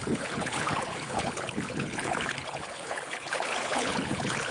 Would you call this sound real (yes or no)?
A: no